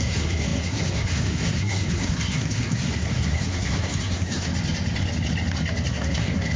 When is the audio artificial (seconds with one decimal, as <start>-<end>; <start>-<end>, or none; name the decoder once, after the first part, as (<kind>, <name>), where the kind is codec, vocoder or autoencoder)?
0.0-4.5 (codec, SNAC); 5.9-6.6